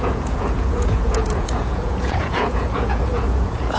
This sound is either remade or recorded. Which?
remade